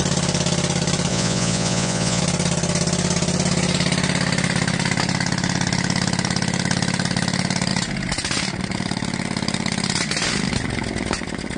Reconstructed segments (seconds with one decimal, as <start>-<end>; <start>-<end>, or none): 1.1-2.2